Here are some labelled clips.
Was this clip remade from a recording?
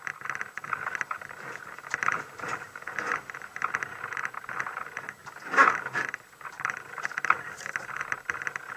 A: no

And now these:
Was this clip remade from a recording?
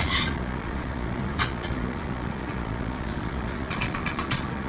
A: yes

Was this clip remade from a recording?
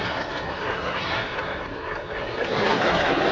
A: yes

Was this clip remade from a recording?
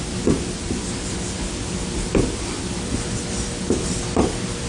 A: yes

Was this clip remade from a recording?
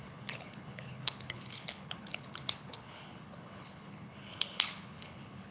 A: yes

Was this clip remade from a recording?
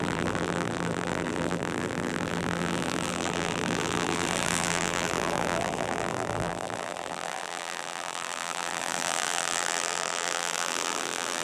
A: yes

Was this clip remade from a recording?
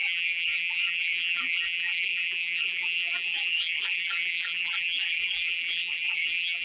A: yes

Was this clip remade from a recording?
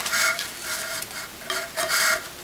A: yes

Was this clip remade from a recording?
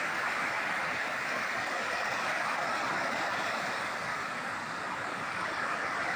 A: yes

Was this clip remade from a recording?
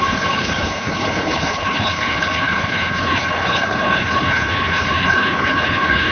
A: yes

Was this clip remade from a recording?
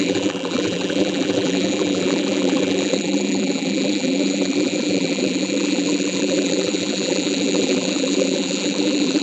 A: yes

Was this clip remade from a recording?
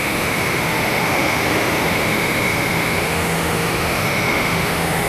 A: yes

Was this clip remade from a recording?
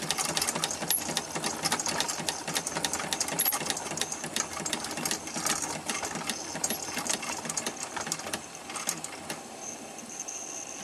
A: no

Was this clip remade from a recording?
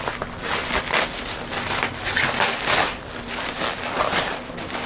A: no